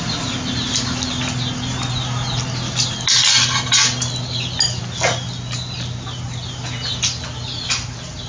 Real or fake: real